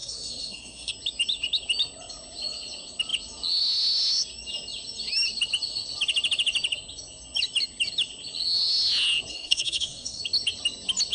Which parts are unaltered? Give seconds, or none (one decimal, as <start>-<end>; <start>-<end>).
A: 0.9-9.3; 10.2-11.1